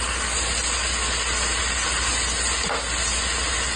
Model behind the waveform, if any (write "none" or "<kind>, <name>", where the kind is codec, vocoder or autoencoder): none